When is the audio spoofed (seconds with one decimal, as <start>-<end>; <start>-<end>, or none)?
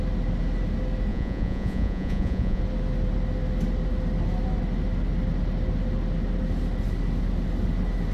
1.1-2.6